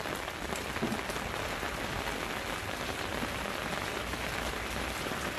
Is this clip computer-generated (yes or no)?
no